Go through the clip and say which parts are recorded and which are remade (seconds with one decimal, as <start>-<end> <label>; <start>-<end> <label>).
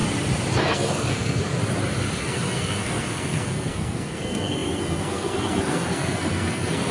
0.0-0.6 recorded; 0.6-1.4 remade; 1.4-2.2 recorded; 2.2-6.9 remade